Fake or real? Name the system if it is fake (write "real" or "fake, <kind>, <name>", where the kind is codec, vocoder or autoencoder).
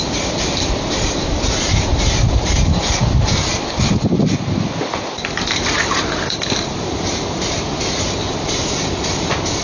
fake, vocoder, BigVGAN v2